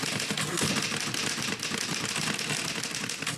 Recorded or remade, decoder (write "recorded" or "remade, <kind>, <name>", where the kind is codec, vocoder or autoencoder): recorded